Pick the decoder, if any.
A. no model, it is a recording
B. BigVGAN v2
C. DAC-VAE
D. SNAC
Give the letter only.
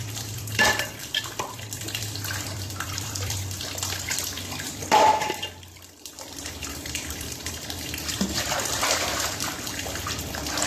B